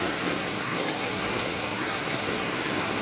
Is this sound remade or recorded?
remade